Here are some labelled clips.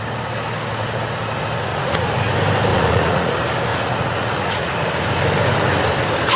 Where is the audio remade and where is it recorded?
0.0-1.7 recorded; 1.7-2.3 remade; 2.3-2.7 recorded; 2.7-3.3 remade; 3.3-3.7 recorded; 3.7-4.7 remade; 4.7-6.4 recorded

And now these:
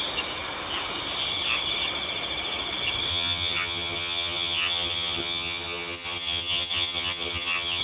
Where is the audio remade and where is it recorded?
0.0-3.1 recorded; 3.1-7.8 remade

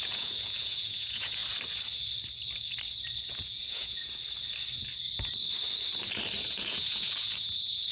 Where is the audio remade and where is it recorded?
0.0-1.4 remade; 1.4-3.3 recorded; 3.3-4.0 remade; 4.0-6.4 recorded; 6.4-7.9 remade

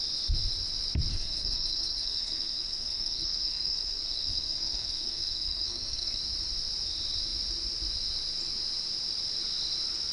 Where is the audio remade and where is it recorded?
0.0-1.1 recorded; 1.1-6.2 remade; 6.2-10.1 recorded